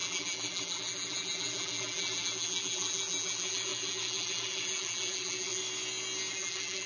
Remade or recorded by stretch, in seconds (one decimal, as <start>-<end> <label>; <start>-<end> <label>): 0.0-5.6 remade; 5.6-6.3 recorded; 6.3-6.9 remade